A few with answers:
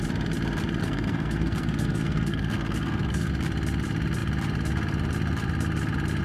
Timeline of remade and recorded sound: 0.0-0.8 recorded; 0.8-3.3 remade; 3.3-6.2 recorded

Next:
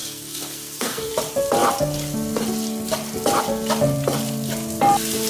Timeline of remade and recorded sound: 0.0-1.1 remade; 1.1-5.3 recorded

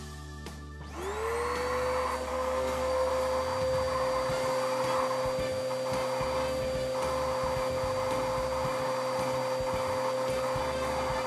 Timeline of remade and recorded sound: 0.0-2.3 recorded; 2.3-3.1 remade; 3.1-11.3 recorded

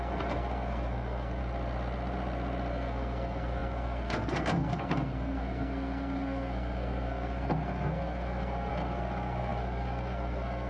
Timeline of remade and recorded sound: 0.0-1.4 remade; 1.4-2.7 recorded; 2.7-10.7 remade

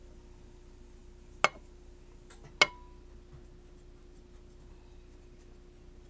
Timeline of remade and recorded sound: 0.0-6.1 recorded

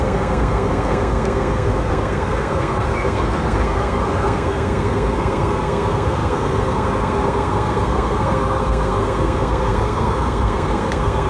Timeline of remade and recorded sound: 0.0-11.3 remade